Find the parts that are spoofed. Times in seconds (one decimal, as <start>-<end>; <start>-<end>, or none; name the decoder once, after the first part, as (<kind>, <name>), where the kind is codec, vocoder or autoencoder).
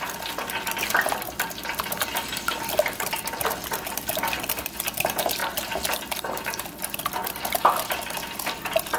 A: none